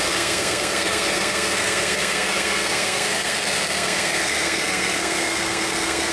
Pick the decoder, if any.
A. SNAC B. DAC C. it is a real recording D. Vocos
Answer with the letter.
A